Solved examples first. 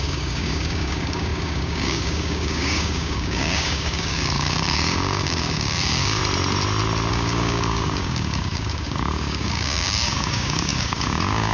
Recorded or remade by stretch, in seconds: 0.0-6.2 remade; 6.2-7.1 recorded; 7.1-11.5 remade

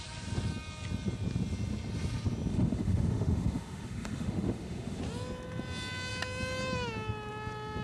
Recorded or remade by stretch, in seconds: 0.0-2.5 recorded; 2.5-5.0 remade; 5.0-7.8 recorded